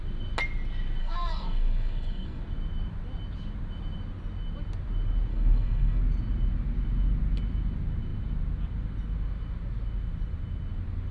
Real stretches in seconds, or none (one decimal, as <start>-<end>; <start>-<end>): 0.0-1.0; 2.4-5.3; 6.0-11.1